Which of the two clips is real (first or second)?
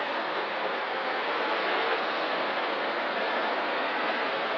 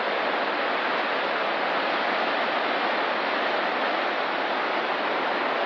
second